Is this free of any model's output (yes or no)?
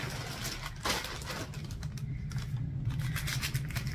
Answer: yes